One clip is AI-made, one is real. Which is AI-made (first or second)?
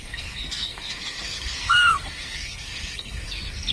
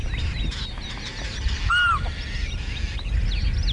first